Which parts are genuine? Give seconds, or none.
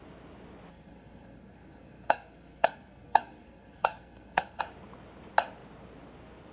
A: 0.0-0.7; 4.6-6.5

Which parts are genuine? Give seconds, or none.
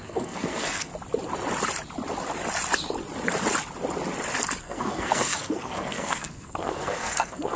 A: 0.9-4.6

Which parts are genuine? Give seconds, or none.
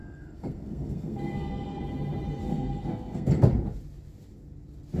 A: 1.8-2.4; 3.3-5.0